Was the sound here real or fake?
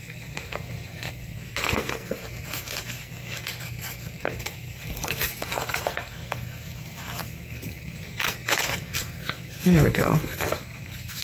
fake